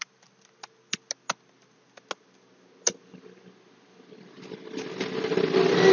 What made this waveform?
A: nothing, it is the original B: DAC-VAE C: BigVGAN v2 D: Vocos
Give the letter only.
A